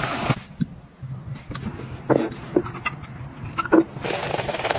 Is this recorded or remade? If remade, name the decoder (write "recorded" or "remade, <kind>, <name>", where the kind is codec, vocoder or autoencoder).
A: recorded